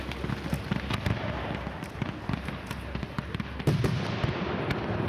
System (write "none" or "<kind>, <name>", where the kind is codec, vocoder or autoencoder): none